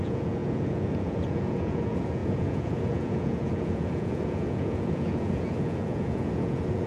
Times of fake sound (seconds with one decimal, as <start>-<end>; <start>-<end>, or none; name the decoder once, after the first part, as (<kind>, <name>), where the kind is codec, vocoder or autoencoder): 0.0-6.9 (vocoder, Vocos)